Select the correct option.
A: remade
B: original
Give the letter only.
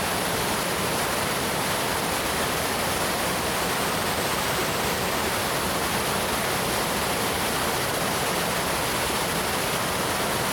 B